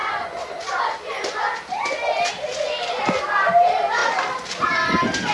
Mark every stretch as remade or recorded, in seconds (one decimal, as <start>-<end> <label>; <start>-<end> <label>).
0.0-5.3 recorded

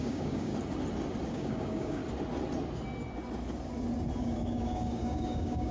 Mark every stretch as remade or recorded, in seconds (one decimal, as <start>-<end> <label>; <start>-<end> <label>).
0.0-0.5 remade; 0.5-1.3 recorded; 1.3-2.0 remade; 2.0-4.2 recorded; 4.2-5.7 remade

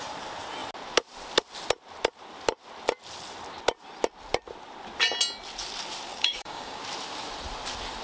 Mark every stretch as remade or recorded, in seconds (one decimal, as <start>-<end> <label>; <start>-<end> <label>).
0.0-6.1 recorded; 6.1-6.8 remade; 6.8-8.0 recorded

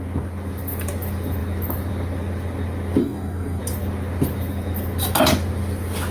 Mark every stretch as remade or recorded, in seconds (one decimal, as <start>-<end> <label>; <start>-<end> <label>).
0.0-3.0 recorded; 3.0-3.6 remade; 3.6-6.1 recorded

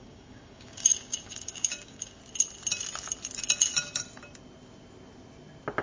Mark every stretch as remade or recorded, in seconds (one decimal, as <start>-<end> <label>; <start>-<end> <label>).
0.0-2.2 remade; 2.2-5.8 recorded

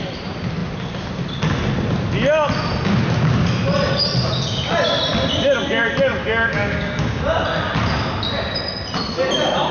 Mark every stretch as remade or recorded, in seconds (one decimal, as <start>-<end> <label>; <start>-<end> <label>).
0.0-6.2 recorded; 6.2-7.2 remade; 7.2-9.7 recorded